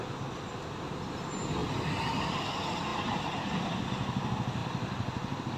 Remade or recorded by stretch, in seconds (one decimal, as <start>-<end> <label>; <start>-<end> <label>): 0.0-2.9 recorded; 2.9-3.8 remade; 3.8-4.6 recorded; 4.6-5.6 remade